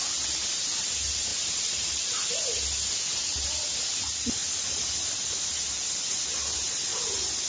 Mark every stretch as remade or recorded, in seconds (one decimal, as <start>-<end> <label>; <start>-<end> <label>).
0.0-1.3 recorded; 1.3-2.0 remade; 2.0-7.5 recorded